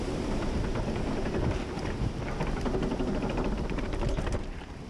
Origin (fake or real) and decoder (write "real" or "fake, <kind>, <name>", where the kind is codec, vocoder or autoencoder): fake, vocoder, BigVGAN v2